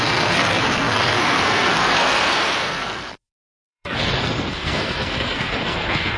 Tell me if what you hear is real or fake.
fake